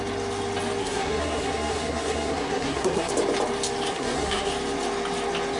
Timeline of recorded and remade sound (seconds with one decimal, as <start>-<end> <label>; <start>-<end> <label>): 0.0-0.8 recorded; 0.8-3.1 remade; 3.1-3.9 recorded; 3.9-4.5 remade; 4.5-5.6 recorded